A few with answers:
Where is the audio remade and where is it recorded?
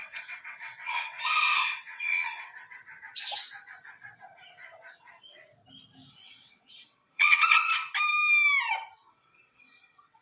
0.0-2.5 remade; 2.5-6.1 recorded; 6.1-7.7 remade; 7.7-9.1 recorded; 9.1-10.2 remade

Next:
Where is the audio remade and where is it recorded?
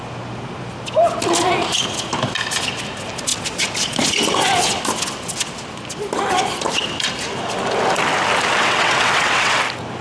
0.0-8.6 recorded; 8.6-9.6 remade; 9.6-10.0 recorded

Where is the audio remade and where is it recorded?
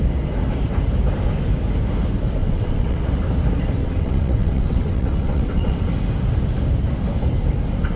0.0-2.4 recorded; 2.4-3.1 remade; 3.1-3.8 recorded; 3.8-5.9 remade; 5.9-8.0 recorded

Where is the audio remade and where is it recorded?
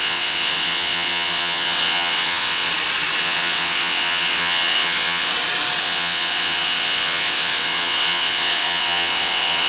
0.0-2.7 remade; 2.7-3.2 recorded; 3.2-5.3 remade; 5.3-5.8 recorded; 5.8-9.7 remade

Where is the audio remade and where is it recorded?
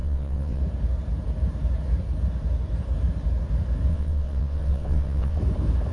0.0-0.6 remade; 0.6-3.9 recorded; 3.9-5.4 remade; 5.4-5.9 recorded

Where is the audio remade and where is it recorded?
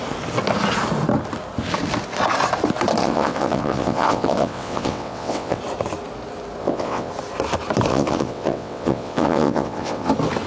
0.0-3.0 recorded; 3.0-5.6 remade; 5.6-6.6 recorded; 6.6-7.1 remade; 7.1-7.9 recorded; 7.9-10.1 remade; 10.1-10.5 recorded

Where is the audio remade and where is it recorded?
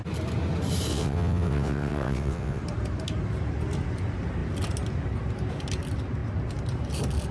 0.0-0.9 recorded; 0.9-2.6 remade; 2.6-7.3 recorded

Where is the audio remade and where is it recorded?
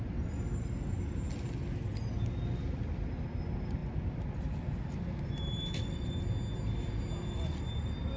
0.0-8.2 recorded